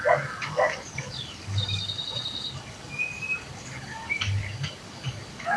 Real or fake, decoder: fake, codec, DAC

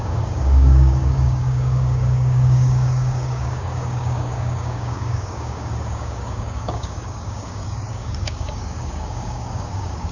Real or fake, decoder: fake, codec, DAC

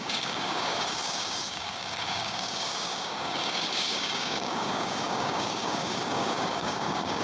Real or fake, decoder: fake, codec, DAC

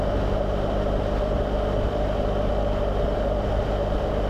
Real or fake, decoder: real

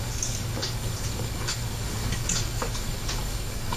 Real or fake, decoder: fake, codec, DAC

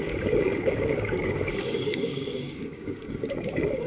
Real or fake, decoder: fake, codec, DAC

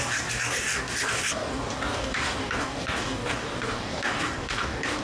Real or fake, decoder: fake, codec, DAC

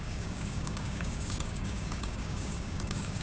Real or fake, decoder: fake, codec, DAC